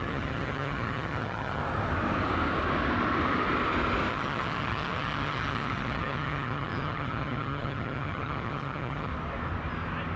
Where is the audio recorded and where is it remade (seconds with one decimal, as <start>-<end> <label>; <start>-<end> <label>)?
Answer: 0.0-1.6 remade; 1.6-4.1 recorded; 4.1-9.1 remade; 9.1-10.2 recorded

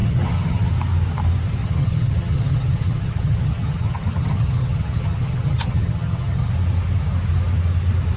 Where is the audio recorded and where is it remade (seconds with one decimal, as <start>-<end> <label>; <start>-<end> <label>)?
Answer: 0.0-0.7 remade; 0.7-1.6 recorded; 1.6-6.5 remade; 6.5-8.2 recorded